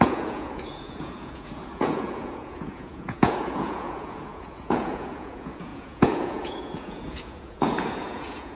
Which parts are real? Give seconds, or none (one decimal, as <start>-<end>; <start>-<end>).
none